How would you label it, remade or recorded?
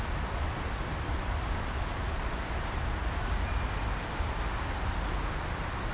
recorded